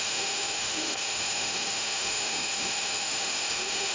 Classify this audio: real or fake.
fake